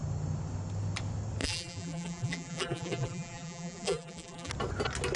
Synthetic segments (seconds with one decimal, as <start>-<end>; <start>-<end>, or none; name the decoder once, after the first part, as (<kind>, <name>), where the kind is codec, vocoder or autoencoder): 1.4-4.5 (vocoder, BigVGAN v2)